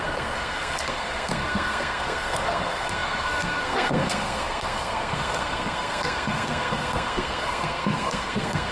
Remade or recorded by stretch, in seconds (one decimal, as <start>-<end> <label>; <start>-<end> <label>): 0.0-8.7 remade